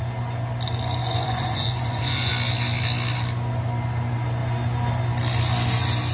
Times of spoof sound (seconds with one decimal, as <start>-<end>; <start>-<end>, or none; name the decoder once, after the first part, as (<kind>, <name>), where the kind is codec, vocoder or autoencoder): 1.0-2.3 (vocoder, Vocos)